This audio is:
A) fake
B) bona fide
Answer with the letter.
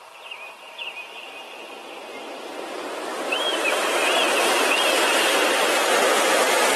A